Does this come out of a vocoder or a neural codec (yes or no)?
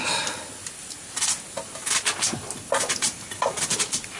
no